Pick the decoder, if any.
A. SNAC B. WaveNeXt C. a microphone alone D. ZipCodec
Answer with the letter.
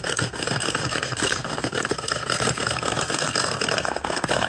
A